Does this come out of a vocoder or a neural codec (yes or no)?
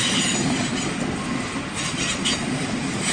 no